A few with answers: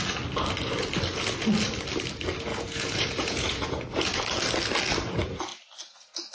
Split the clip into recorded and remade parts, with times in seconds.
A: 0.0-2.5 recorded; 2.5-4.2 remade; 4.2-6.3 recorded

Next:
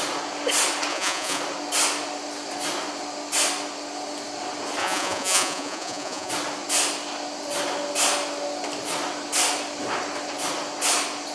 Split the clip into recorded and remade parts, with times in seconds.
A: 0.0-0.9 recorded; 0.9-1.4 remade; 1.4-4.8 recorded; 4.8-6.3 remade; 6.3-11.3 recorded